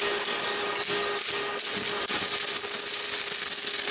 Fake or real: real